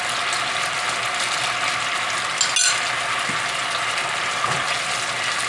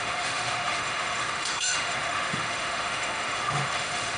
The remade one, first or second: second